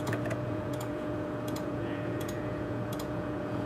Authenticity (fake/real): fake